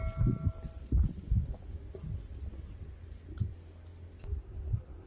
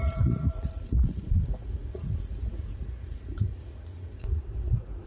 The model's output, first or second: second